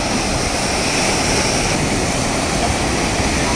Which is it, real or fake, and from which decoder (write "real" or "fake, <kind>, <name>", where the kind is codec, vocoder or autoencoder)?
real